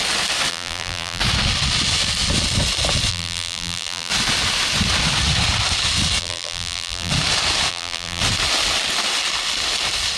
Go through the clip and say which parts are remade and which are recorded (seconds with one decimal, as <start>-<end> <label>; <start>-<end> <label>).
0.0-0.5 recorded; 0.5-1.2 remade; 1.2-3.1 recorded; 3.1-4.1 remade; 4.1-6.2 recorded; 6.2-7.1 remade; 7.1-7.7 recorded; 7.7-8.2 remade; 8.2-10.2 recorded